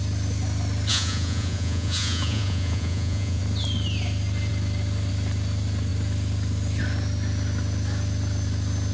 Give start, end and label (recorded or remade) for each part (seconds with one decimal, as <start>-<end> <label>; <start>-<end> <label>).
0.0-0.9 recorded; 0.9-3.4 remade; 3.4-8.9 recorded

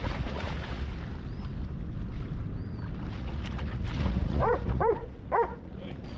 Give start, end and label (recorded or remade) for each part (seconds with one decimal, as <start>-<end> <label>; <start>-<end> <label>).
0.0-0.9 remade; 0.9-3.1 recorded; 3.1-6.2 remade

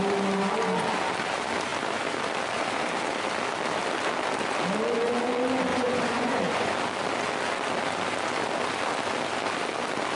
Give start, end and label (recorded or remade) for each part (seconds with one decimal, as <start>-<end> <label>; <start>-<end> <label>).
0.0-5.7 recorded; 5.7-6.7 remade; 6.7-10.2 recorded

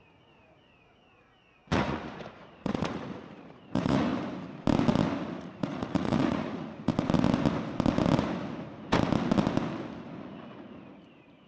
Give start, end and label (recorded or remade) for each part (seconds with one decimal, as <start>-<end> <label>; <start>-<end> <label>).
0.0-4.1 remade; 4.1-5.4 recorded; 5.4-6.9 remade; 6.9-10.2 recorded; 10.2-11.5 remade

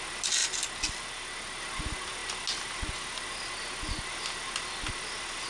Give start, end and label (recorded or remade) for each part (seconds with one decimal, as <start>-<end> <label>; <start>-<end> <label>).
0.0-5.5 recorded